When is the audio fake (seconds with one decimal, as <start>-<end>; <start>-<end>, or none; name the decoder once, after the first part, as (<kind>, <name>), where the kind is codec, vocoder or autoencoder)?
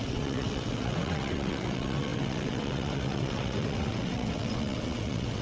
0.0-5.4 (vocoder, WaveNeXt)